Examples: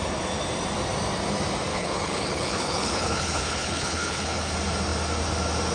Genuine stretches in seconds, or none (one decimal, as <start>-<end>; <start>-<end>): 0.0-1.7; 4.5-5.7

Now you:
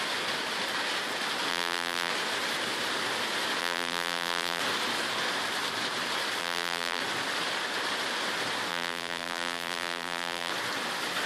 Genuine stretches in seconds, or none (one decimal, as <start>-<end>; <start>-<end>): 0.0-1.5; 2.1-3.6; 4.6-6.4; 7.0-8.7; 10.5-11.3

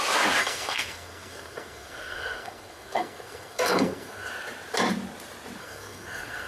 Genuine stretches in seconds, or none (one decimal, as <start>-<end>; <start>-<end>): 0.0-0.4; 4.3-5.6

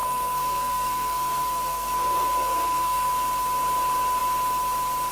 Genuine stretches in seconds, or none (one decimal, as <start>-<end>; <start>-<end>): 3.1-5.1

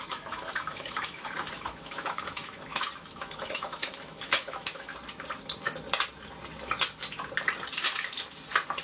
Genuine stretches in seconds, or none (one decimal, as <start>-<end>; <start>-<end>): 4.9-8.8